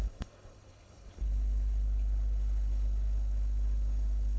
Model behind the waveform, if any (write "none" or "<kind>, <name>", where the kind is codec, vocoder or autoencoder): codec, HILCodec